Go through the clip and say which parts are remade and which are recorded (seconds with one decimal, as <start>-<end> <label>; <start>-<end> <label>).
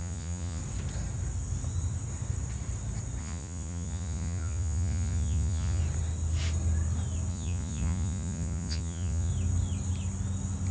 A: 0.0-0.6 remade; 0.6-3.2 recorded; 3.2-5.8 remade; 5.8-7.3 recorded; 7.3-9.3 remade; 9.3-10.7 recorded